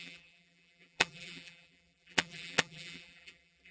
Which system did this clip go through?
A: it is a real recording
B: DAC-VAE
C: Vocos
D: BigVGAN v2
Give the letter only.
D